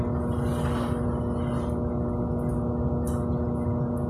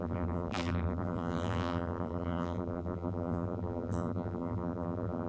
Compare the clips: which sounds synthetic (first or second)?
second